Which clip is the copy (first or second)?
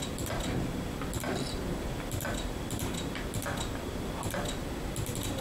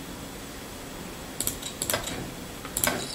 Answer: first